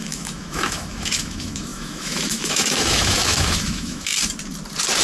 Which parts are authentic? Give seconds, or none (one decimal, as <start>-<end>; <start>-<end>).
4.1-5.0